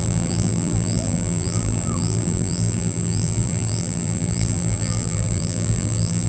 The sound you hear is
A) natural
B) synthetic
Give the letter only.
B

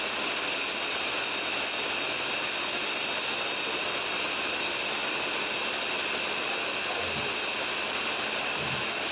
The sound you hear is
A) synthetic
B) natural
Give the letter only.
B